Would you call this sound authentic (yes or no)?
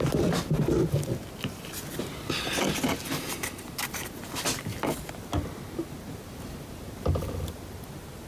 yes